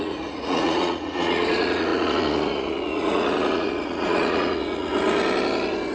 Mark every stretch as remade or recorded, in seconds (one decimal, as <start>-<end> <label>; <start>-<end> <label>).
0.0-4.9 remade; 4.9-5.9 recorded